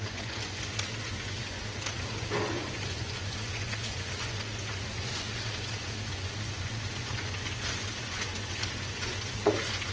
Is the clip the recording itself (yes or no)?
no